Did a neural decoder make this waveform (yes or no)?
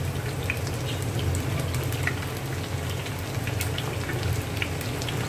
no